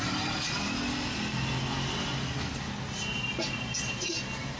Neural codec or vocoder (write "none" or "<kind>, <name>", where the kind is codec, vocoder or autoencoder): none